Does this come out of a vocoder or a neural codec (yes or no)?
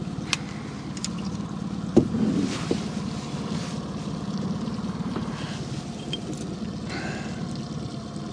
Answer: no